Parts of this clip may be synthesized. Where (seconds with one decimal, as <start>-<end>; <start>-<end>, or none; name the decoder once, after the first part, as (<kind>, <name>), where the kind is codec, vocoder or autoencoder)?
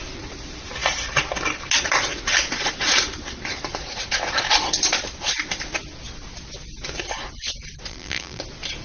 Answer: 7.9-8.4 (vocoder, BigVGAN v2)